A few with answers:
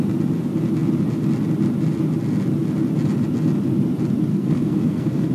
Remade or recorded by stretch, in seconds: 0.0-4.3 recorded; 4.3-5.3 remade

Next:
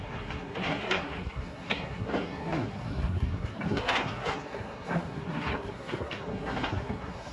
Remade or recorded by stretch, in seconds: 0.0-7.3 remade